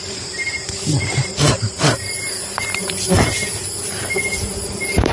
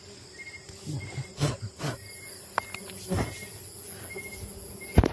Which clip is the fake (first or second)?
first